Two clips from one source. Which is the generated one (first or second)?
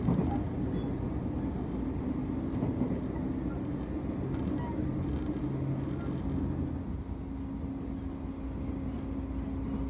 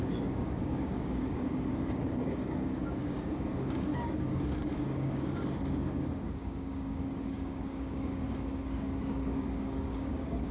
second